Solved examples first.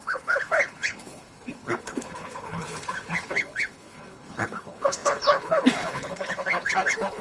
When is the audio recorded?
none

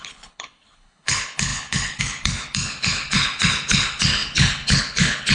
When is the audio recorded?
none

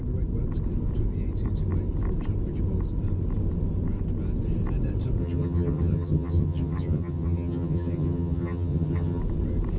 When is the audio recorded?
0.0-5.2; 9.2-9.8